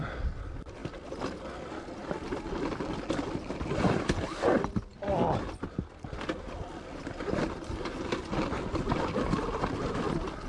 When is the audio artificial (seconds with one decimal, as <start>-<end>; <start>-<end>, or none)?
none